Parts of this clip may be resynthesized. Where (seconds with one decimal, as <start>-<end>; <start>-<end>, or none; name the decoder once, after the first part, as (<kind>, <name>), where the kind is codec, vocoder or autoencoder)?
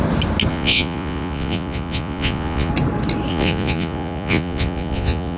0.5-2.7 (vocoder, Vocos); 3.3-5.4